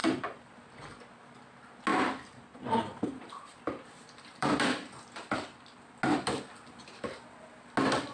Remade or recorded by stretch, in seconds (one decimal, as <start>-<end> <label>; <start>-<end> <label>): 0.0-0.9 remade; 0.9-1.9 recorded; 1.9-5.8 remade; 5.8-8.1 recorded